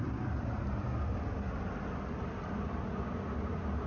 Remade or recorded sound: recorded